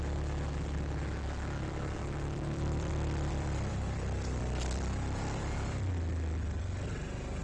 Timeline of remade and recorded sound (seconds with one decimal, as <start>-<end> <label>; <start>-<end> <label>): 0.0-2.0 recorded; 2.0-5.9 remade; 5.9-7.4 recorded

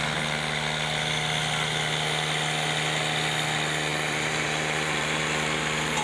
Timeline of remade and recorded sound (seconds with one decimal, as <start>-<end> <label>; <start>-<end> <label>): 0.0-3.9 recorded; 3.9-5.2 remade; 5.2-6.0 recorded

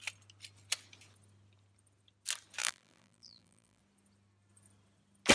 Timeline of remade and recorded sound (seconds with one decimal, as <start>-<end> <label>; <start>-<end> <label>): 0.0-2.6 recorded; 2.6-3.8 remade; 3.8-5.3 recorded